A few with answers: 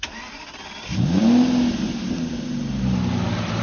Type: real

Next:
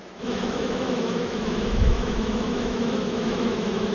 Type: fake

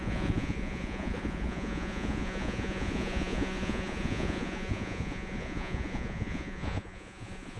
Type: fake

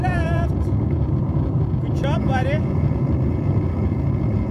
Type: fake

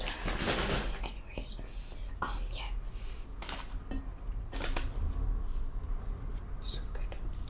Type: real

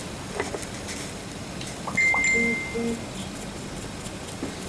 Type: real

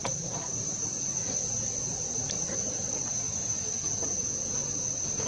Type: real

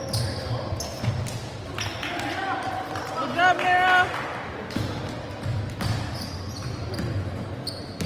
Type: real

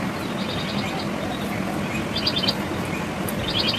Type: real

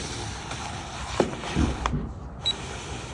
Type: fake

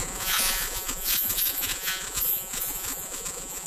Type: fake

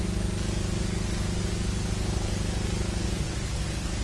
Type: real